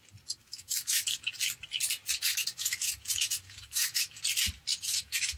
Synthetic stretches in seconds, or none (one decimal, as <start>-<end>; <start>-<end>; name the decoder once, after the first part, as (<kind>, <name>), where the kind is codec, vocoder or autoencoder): 0.4-1.3 (autoencoder, DAC-VAE); 2.3-4.2; 4.7-5.4

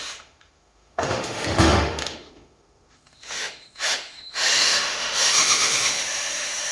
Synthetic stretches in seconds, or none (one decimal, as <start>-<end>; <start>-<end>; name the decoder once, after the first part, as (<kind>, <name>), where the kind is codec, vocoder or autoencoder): 0.0-6.7 (autoencoder, DAC-VAE)